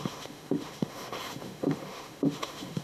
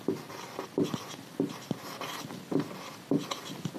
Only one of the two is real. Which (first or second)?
second